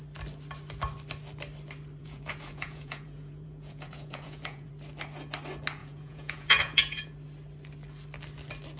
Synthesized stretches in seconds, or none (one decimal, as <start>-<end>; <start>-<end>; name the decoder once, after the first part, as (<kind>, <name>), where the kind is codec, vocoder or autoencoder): 2.0-4.7 (vocoder, Vocos); 5.8-7.1